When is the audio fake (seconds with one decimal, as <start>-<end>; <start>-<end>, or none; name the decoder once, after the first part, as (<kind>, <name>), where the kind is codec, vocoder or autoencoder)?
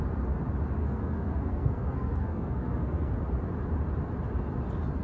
0.8-3.1 (codec, SNAC)